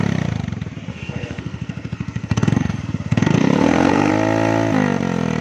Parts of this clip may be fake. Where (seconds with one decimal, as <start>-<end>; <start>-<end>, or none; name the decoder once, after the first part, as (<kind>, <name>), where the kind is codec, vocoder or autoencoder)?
0.9-4.1 (codec, SNAC)